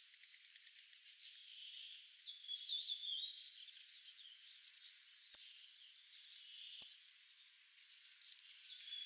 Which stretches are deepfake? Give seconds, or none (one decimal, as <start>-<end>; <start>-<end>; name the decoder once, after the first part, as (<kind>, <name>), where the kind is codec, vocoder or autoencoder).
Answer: 0.0-2.7 (vocoder, BigVGAN v2); 7.9-9.1